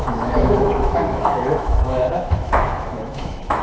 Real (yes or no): no